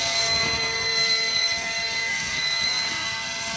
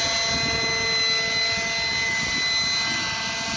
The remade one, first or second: first